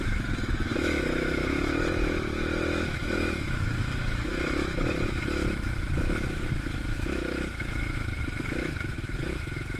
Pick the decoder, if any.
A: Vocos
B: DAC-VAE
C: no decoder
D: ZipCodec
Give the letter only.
B